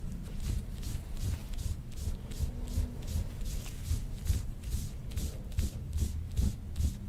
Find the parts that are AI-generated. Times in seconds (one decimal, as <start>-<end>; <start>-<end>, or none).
none